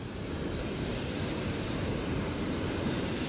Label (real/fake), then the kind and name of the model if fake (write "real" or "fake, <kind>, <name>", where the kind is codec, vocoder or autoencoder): fake, vocoder, BigVGAN v2